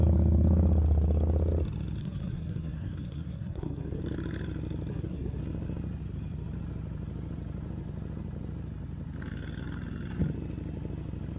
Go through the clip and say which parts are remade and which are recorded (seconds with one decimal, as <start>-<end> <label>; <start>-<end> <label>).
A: 0.0-2.0 recorded; 2.0-4.0 remade; 4.0-4.9 recorded; 4.9-5.4 remade; 5.4-11.4 recorded